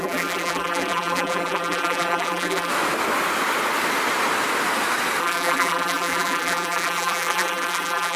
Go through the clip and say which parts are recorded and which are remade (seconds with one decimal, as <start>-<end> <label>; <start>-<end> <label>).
0.0-2.7 remade; 2.7-5.2 recorded; 5.2-8.2 remade